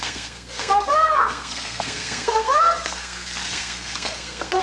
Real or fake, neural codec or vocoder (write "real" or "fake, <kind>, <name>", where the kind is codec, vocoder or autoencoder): fake, codec, SNAC